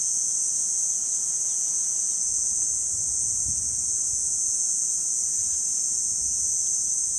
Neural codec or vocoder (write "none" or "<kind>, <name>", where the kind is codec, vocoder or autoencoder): vocoder, Vocos